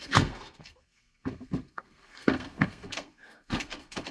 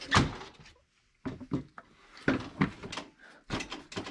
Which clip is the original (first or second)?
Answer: second